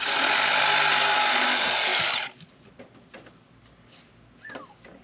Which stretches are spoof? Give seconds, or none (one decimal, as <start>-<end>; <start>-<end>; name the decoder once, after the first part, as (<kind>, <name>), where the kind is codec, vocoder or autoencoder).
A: 1.9-2.7 (vocoder, BigVGAN v2)